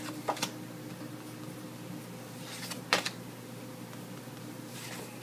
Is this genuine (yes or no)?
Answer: yes